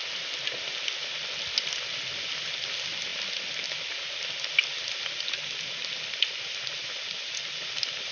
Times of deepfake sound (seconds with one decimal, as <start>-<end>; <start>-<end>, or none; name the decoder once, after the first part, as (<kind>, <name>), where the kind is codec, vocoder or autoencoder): none